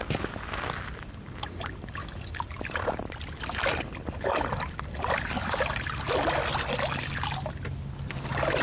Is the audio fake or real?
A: real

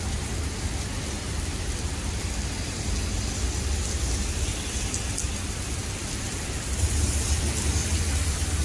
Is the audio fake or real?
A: real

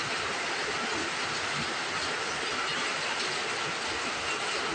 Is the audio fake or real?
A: real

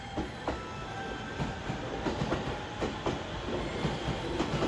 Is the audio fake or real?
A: real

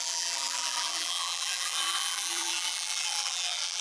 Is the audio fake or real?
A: fake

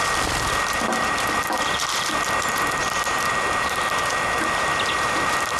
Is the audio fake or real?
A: fake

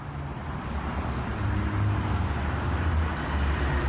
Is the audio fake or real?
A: real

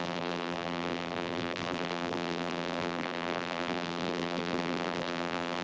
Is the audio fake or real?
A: fake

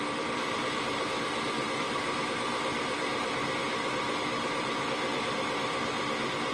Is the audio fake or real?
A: fake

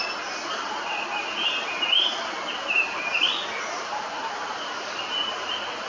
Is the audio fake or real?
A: real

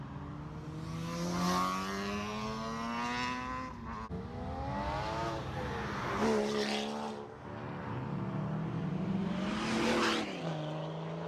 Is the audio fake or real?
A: real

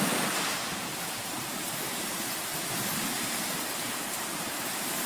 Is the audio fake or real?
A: fake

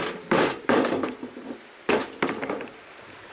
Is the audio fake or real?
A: fake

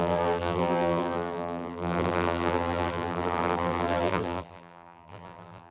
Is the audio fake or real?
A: fake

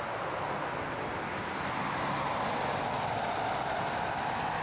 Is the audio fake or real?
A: real